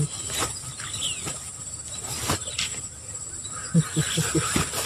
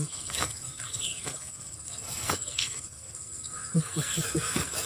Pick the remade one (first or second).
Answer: second